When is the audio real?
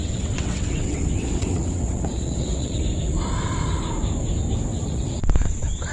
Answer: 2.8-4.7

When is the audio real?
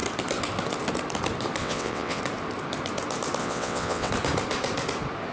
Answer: 0.0-1.6; 2.2-3.4; 4.1-5.3